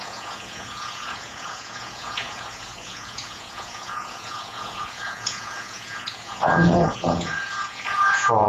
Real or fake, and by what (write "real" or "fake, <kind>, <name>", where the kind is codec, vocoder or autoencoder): fake, vocoder, Vocos